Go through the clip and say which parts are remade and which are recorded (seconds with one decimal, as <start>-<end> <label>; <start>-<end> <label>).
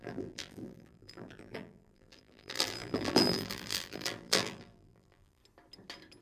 0.0-5.4 remade; 5.4-6.2 recorded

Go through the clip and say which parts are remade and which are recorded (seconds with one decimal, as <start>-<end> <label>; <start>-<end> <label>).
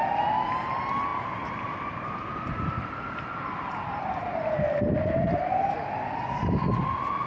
0.0-7.3 recorded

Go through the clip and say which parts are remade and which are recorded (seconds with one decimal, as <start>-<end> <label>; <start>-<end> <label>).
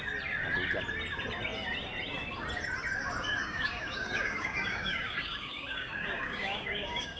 0.0-3.4 recorded; 3.4-7.2 remade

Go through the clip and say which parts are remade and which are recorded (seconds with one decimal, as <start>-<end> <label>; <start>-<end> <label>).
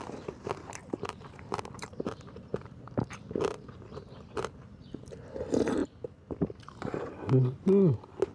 0.0-0.8 recorded; 0.8-5.2 remade; 5.2-8.3 recorded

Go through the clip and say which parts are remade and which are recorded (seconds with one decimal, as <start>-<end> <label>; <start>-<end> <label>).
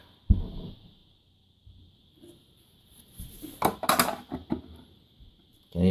0.0-5.9 recorded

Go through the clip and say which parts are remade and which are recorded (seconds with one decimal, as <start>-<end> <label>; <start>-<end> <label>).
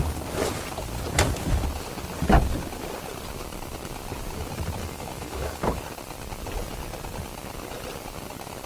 0.0-4.8 recorded; 4.8-5.8 remade; 5.8-8.7 recorded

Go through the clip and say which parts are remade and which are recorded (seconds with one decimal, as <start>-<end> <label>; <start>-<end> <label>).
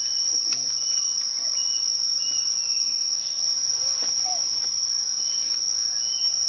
0.0-2.8 recorded; 2.8-3.4 remade; 3.4-6.5 recorded